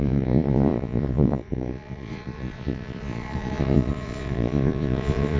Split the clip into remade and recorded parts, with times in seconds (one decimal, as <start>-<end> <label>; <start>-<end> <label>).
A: 0.0-5.4 remade